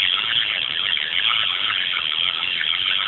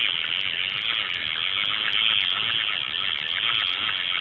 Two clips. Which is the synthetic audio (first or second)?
first